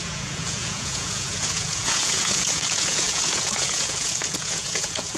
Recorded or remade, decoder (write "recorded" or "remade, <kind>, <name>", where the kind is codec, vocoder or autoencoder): remade, vocoder, Vocos